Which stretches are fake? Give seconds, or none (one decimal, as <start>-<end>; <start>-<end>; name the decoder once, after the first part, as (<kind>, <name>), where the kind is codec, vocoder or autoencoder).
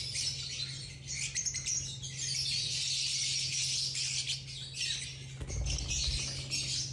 none